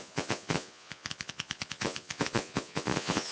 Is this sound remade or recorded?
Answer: remade